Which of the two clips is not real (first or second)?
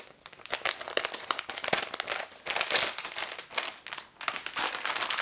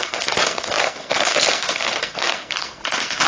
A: second